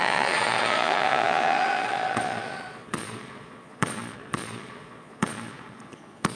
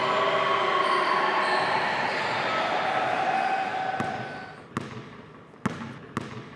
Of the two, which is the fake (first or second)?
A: first